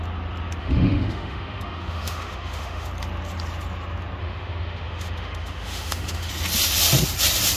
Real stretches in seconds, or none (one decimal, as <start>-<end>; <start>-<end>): 0.0-0.6; 2.9-4.2; 6.3-7.6